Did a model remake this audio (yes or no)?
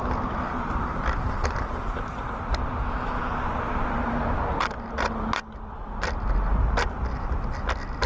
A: no